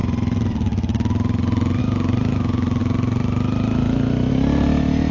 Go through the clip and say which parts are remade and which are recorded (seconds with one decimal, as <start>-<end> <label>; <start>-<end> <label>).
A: 0.0-5.1 recorded